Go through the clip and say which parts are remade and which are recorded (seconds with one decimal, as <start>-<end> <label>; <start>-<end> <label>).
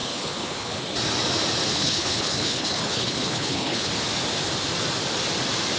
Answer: 0.0-0.8 remade; 0.8-1.7 recorded; 1.7-3.9 remade; 3.9-5.8 recorded